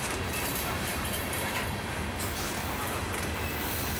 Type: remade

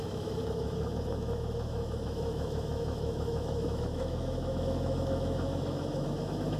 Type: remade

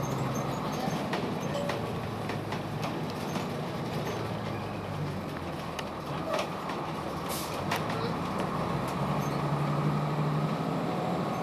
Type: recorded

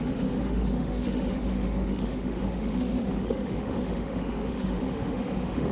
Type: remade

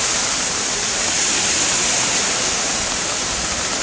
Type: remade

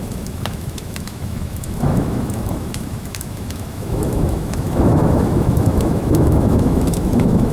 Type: remade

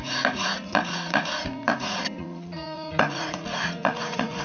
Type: remade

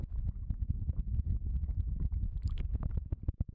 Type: recorded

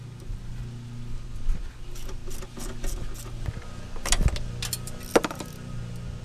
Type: recorded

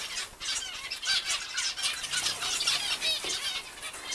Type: recorded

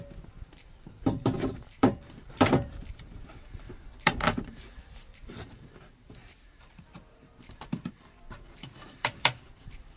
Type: remade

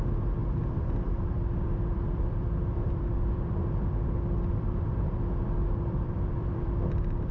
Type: remade